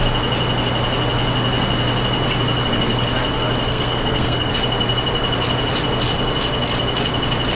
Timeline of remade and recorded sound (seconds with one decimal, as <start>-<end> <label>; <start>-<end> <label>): 0.0-3.7 recorded; 3.7-4.5 remade; 4.5-7.5 recorded